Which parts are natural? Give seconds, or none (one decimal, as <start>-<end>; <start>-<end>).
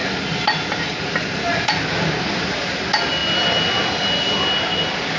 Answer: 0.0-5.2